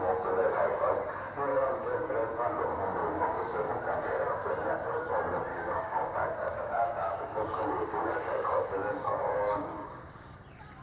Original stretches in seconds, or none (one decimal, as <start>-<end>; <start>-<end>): 0.0-1.5; 2.1-3.0; 3.7-5.5; 10.1-10.8